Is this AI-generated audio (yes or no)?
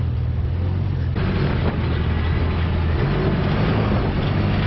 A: no